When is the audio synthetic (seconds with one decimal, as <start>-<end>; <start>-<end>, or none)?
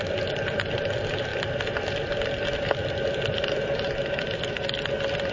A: none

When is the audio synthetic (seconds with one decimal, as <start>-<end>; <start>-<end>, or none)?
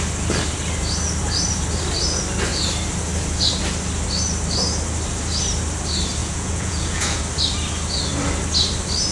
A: 6.2-7.2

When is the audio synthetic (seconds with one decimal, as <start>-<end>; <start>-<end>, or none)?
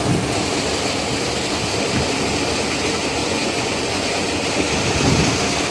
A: 3.2-4.3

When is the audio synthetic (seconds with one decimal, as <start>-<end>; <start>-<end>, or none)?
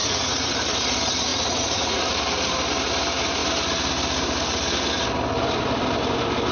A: 0.0-0.5; 1.3-2.0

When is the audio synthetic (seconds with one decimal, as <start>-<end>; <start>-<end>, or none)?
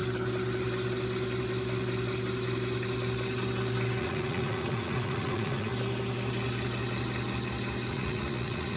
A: 4.0-5.7; 7.9-8.8